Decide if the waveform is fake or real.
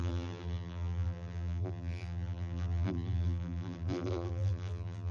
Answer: fake